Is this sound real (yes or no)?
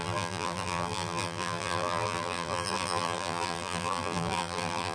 no